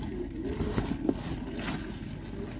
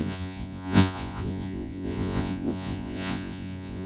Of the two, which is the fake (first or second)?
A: second